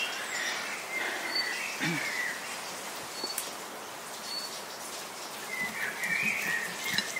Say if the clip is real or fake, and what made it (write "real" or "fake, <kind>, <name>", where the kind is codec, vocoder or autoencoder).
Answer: real